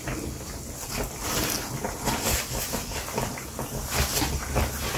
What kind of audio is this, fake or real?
real